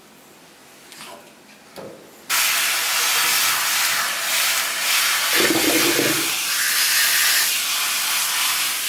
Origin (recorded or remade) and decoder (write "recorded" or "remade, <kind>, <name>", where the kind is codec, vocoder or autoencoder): recorded